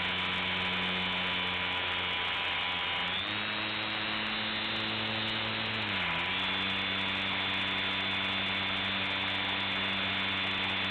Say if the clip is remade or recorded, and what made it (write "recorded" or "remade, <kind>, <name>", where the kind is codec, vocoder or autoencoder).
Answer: recorded